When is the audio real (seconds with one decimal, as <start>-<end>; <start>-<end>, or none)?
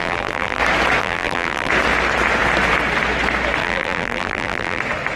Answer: 0.6-1.0; 1.7-3.6; 4.8-5.2